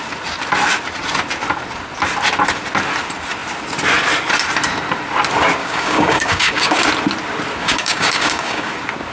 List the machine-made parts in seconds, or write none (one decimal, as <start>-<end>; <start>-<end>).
5.6-6.8; 7.6-8.7

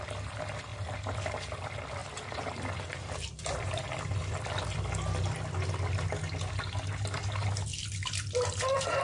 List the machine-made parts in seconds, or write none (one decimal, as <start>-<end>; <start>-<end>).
0.7-1.4; 2.0-4.5; 7.7-9.0